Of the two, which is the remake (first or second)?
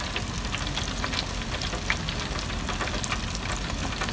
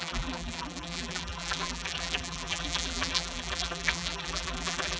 second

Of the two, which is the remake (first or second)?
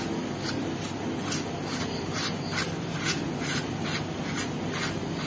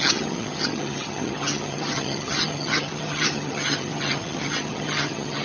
second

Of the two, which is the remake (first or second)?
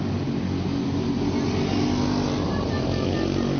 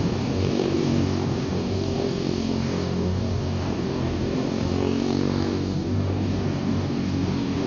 second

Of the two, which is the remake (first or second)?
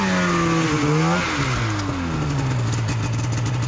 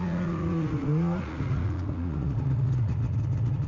second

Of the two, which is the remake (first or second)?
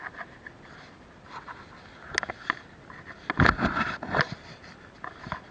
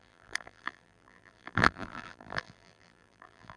second